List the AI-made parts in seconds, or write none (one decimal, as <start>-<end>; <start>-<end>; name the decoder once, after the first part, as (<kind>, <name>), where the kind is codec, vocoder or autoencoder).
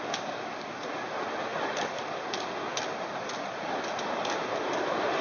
1.5-4.6 (vocoder, BigVGAN v2)